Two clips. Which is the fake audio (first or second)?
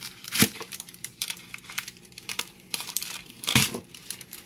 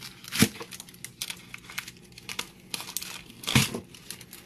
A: first